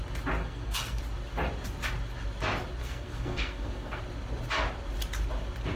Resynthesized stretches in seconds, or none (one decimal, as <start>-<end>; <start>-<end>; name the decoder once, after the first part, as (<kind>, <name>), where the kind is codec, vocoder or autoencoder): 0.4-1.0 (codec, SNAC); 2.8-4.0